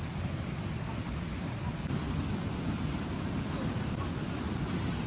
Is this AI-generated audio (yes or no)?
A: no